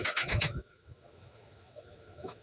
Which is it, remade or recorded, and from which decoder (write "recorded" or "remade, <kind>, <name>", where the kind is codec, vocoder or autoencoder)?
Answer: remade, autoencoder, DAC-VAE